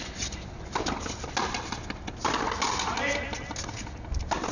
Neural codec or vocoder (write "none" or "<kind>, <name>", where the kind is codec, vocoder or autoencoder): none